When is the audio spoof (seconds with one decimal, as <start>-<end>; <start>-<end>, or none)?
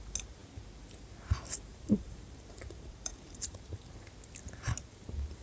1.7-3.9